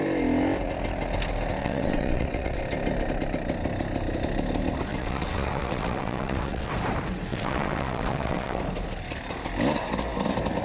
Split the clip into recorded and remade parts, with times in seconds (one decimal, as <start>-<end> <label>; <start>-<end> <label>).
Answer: 0.0-1.6 recorded; 1.6-2.6 remade; 2.6-4.9 recorded; 4.9-6.7 remade; 6.7-7.3 recorded; 7.3-8.6 remade; 8.6-10.6 recorded